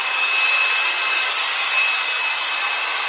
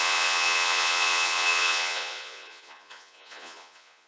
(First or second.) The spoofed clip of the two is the second